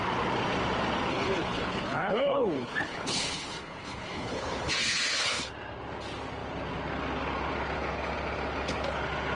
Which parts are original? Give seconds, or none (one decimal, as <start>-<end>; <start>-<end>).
0.0-1.1; 5.5-9.3